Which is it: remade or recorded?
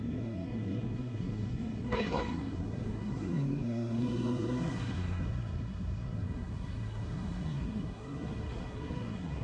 remade